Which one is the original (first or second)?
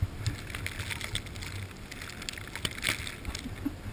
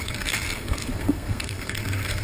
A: first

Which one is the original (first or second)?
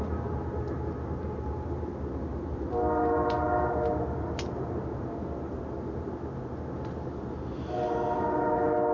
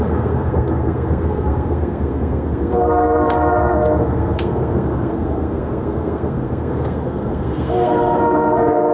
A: first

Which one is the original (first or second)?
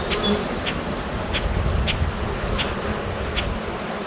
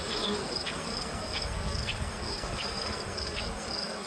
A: first